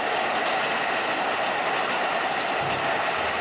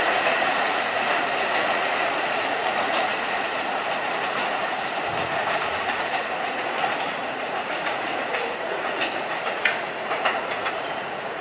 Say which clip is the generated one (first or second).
second